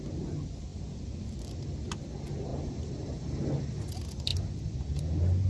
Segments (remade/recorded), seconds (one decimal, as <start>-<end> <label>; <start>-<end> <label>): 0.0-0.7 recorded; 0.7-1.4 remade; 1.4-4.3 recorded; 4.3-5.0 remade; 5.0-5.5 recorded